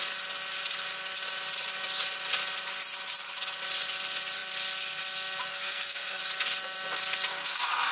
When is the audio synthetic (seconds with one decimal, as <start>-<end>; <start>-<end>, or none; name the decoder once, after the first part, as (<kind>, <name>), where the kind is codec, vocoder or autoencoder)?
5.5-6.2 (codec, SNAC); 7.3-7.9

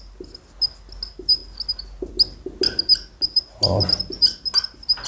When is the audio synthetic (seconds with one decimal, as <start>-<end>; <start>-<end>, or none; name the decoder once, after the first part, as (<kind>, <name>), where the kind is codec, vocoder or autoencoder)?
none

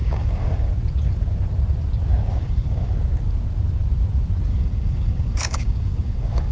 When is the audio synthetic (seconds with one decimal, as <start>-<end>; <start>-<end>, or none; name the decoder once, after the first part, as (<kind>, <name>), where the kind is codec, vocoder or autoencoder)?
0.0-0.7 (codec, DAC); 2.3-2.9; 4.5-6.5